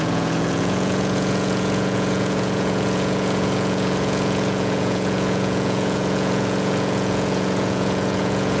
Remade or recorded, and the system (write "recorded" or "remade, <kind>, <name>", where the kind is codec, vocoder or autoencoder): remade, vocoder, Vocos